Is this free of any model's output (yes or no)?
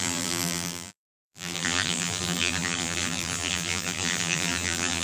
no